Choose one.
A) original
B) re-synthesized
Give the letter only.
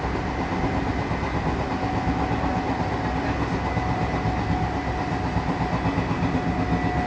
A